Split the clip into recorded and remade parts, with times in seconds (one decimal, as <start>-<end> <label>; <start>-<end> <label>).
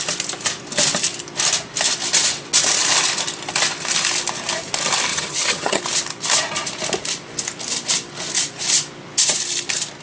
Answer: 0.0-5.1 recorded; 5.1-5.8 remade; 5.8-10.0 recorded